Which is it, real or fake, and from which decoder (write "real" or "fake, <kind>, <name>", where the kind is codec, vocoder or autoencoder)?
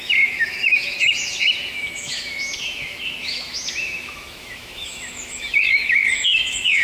fake, autoencoder, DAC-VAE